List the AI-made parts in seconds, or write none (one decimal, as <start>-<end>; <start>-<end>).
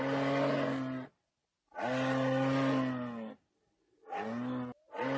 none